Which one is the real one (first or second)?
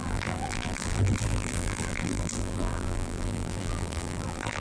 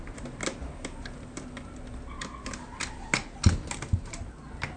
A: second